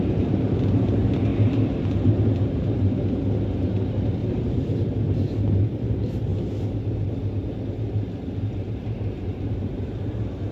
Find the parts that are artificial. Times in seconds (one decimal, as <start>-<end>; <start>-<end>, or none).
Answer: 0.0-1.3; 2.5-4.2; 5.6-6.3; 8.5-10.5